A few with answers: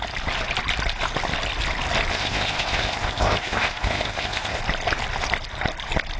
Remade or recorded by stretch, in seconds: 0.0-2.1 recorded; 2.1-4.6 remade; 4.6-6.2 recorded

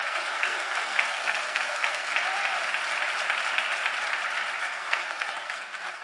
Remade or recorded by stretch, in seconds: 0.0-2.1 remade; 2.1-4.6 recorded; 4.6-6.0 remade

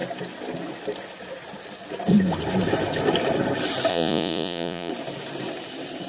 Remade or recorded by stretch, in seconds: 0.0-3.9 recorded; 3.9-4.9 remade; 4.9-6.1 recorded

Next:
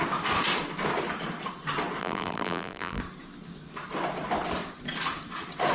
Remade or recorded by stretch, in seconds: 0.0-2.0 recorded; 2.0-3.0 remade; 3.0-5.7 recorded

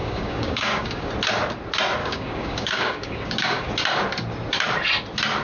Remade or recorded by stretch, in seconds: 0.0-1.1 remade; 1.1-2.0 recorded; 2.0-3.7 remade; 3.7-5.4 recorded

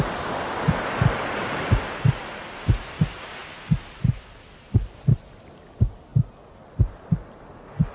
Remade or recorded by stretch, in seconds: 0.0-3.4 recorded; 3.4-5.2 remade; 5.2-7.9 recorded